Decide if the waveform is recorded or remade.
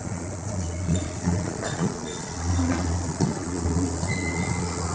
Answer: remade